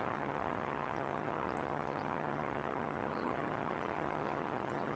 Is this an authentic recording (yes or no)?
no